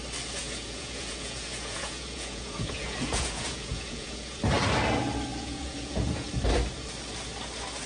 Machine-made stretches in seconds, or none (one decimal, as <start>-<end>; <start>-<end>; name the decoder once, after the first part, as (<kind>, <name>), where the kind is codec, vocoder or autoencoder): 0.4-4.4 (vocoder, Vocos); 5.3-6.3